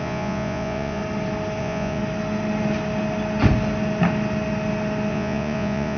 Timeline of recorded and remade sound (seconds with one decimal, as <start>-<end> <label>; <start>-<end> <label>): 0.0-1.0 remade; 1.0-1.6 recorded; 1.6-2.0 remade; 2.0-5.1 recorded; 5.1-6.0 remade